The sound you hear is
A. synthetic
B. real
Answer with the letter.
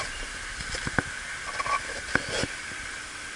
B